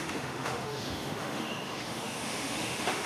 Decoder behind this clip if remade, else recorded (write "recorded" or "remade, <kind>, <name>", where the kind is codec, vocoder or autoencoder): remade, autoencoder, DAC-VAE